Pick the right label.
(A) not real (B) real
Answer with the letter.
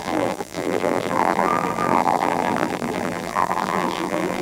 A